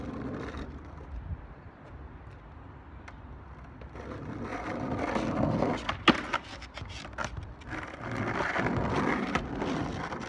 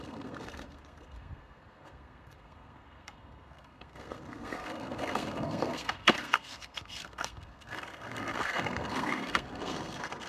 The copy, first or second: second